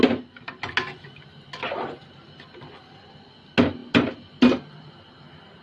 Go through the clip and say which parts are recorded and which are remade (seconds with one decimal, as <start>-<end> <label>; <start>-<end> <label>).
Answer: 0.0-5.6 recorded